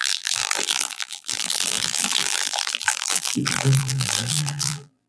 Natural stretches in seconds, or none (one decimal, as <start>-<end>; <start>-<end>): none